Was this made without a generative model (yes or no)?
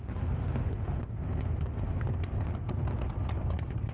yes